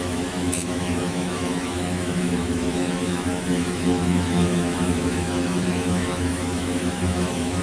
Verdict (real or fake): fake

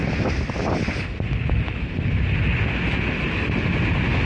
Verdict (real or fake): real